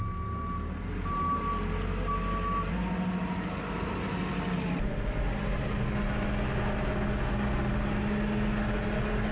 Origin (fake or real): real